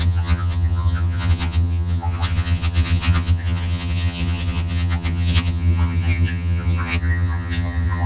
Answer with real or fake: fake